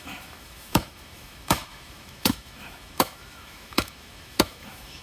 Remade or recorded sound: remade